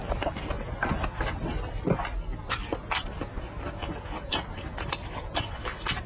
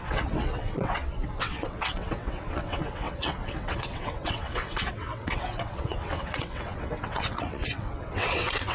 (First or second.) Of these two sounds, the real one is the first